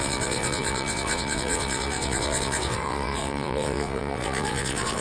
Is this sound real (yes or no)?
no